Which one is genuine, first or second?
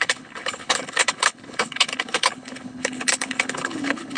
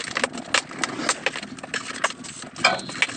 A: second